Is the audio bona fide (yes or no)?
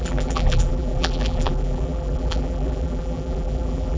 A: no